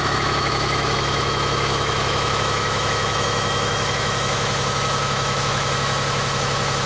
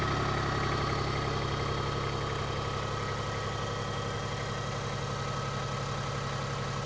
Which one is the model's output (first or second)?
first